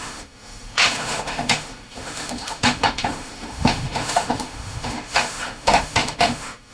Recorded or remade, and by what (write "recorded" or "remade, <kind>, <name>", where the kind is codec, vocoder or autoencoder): remade, autoencoder, DAC-VAE